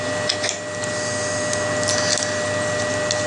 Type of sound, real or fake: real